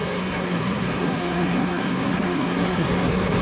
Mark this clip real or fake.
fake